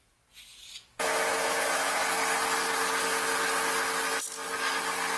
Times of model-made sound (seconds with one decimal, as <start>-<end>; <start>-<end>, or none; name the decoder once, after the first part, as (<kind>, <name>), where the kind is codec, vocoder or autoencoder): 0.0-2.0 (vocoder, Vocos)